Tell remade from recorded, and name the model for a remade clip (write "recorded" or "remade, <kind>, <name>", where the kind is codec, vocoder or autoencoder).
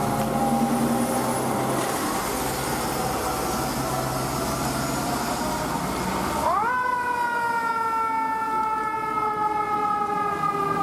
recorded